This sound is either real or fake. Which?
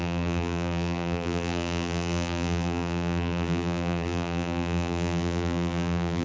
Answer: fake